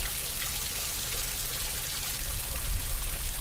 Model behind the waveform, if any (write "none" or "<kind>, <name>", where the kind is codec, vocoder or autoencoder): none